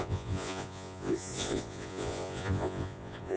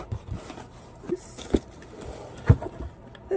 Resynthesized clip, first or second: first